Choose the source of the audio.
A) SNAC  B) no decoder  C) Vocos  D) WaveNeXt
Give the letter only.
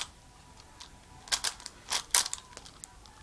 B